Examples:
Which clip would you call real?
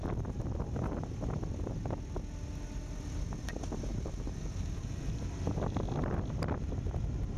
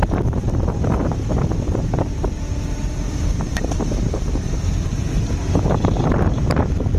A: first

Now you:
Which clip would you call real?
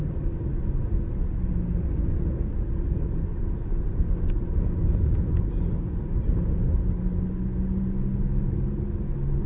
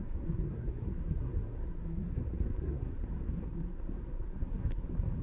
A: first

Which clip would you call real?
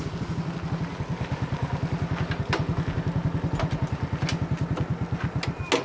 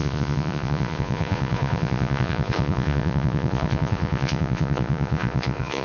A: first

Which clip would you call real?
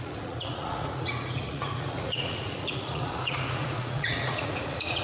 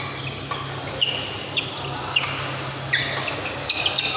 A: second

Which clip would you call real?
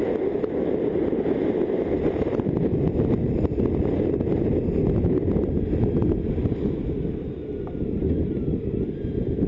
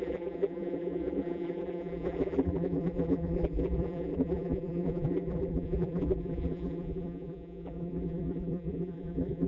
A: first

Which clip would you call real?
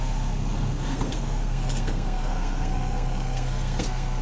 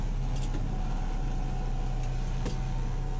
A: second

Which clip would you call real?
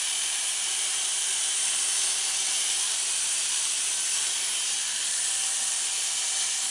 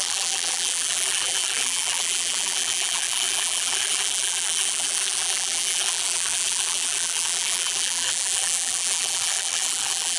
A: first